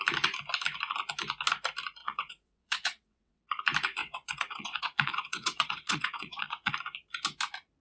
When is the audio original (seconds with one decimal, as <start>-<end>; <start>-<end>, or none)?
0.0-2.0; 3.4-4.0; 6.7-7.8